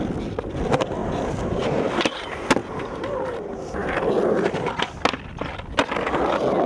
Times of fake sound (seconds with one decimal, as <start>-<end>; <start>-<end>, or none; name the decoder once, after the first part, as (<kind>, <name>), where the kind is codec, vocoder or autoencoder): 1.0-1.8 (vocoder, BigVGAN v2); 2.6-3.4